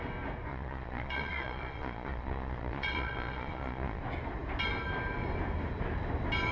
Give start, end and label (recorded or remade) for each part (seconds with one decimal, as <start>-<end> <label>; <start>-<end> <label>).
0.0-0.5 recorded; 0.5-4.0 remade; 4.0-6.5 recorded